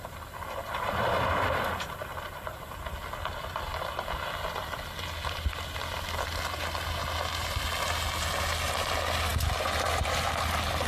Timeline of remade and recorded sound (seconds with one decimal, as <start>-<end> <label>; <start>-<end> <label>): 0.0-10.9 recorded